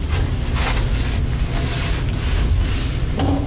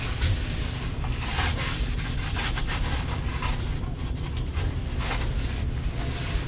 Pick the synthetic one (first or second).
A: second